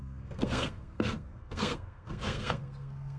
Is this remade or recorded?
remade